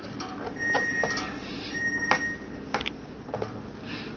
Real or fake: real